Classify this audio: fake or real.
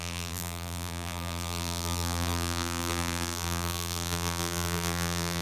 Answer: fake